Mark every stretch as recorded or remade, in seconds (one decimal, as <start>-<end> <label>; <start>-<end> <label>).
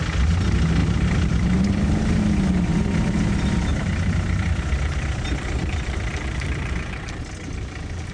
0.0-0.8 recorded; 0.8-2.2 remade; 2.2-3.7 recorded; 3.7-7.2 remade; 7.2-8.1 recorded